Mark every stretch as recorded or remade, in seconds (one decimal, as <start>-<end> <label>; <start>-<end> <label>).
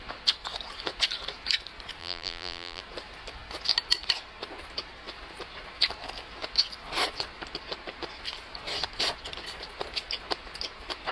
0.0-2.0 recorded; 2.0-2.8 remade; 2.8-11.1 recorded